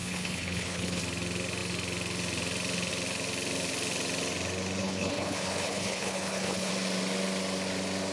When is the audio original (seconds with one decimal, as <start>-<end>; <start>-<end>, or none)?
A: 1.0-4.8; 6.7-8.1